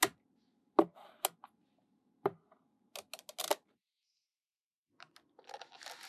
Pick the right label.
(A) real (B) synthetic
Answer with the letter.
A